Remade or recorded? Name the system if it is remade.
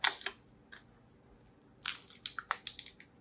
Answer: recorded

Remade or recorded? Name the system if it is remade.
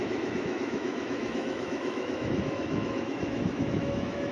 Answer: remade, autoencoder, DAC-VAE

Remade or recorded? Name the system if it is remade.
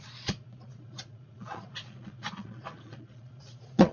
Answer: remade, vocoder, Vocos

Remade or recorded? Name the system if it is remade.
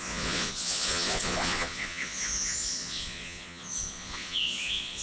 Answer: remade, vocoder, Vocos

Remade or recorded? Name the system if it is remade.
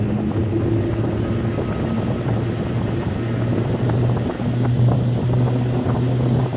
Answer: recorded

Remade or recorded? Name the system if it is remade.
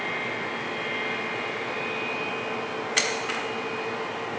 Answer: recorded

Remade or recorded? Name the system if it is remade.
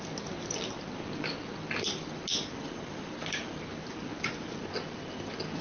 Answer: recorded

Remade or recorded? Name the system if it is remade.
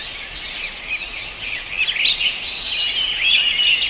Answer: recorded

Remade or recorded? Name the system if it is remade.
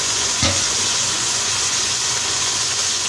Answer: remade, vocoder, Vocos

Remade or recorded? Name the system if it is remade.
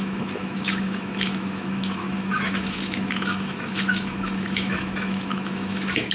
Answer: remade, autoencoder, DAC-VAE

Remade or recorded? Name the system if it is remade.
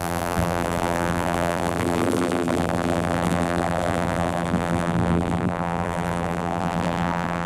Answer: remade, vocoder, BigVGAN v2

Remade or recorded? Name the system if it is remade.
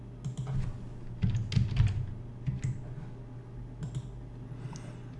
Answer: recorded